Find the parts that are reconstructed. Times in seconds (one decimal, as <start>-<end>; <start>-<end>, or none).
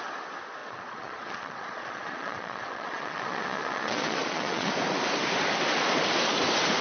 0.6-4.7